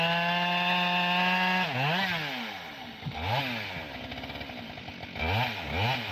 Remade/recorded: recorded